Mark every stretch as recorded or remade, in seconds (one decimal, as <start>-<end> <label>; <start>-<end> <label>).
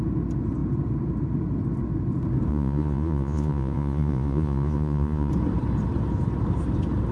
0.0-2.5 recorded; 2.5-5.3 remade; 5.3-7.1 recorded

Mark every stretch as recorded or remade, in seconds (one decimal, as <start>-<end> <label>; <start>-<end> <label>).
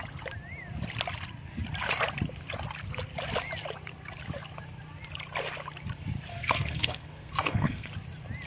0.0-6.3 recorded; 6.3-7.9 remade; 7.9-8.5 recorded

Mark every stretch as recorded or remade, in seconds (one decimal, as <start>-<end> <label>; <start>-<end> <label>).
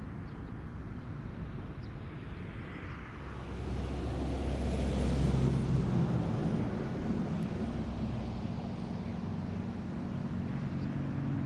0.0-6.4 recorded; 6.4-8.5 remade; 8.5-9.3 recorded; 9.3-10.7 remade; 10.7-11.5 recorded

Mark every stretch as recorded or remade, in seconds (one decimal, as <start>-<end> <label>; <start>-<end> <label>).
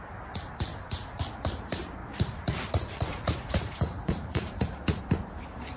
0.0-2.0 recorded; 2.0-5.0 remade; 5.0-5.8 recorded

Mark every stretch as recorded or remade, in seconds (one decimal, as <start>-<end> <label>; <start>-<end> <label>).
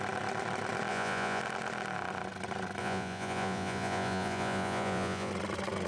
0.0-0.9 recorded; 0.9-1.4 remade; 1.4-2.8 recorded; 2.8-5.3 remade; 5.3-5.9 recorded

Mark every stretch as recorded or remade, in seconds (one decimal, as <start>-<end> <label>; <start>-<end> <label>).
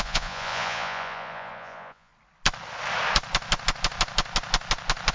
0.0-2.1 remade; 2.1-5.1 recorded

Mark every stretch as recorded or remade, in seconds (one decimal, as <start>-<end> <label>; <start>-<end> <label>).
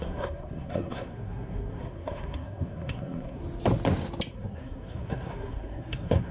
0.0-3.4 remade; 3.4-4.3 recorded; 4.3-6.3 remade